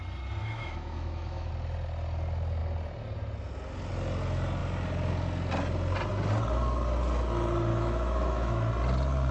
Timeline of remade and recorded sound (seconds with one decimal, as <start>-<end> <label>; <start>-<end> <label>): 0.0-0.4 recorded; 0.4-1.5 remade; 1.5-7.7 recorded; 7.7-8.7 remade; 8.7-9.3 recorded